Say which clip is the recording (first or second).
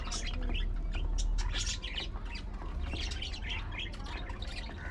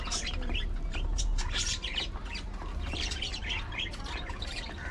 first